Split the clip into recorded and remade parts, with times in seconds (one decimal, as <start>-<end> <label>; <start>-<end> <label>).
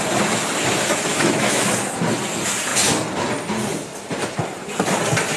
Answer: 0.0-1.1 recorded; 1.1-1.6 remade; 1.6-5.4 recorded